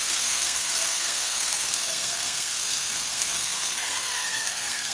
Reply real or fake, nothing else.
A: fake